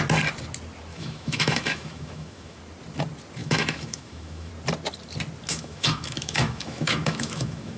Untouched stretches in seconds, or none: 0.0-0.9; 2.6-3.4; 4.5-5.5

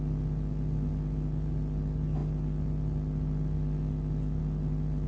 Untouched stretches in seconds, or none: 0.0-5.1

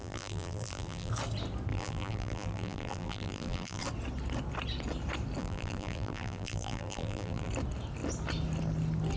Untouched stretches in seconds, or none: 1.1-1.7; 3.8-5.4; 7.5-9.2

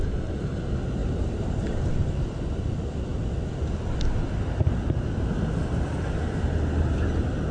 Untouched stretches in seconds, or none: 0.0-1.0; 1.9-7.5

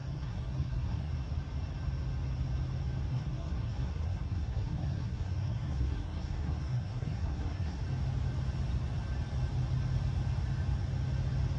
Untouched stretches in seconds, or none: 1.1-3.1; 7.8-11.6

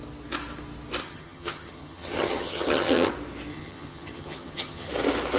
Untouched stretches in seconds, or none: 0.0-1.0; 3.1-3.5; 4.9-5.4

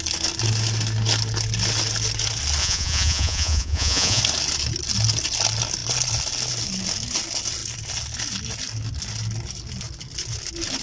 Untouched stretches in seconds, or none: 0.0-2.6; 4.2-10.8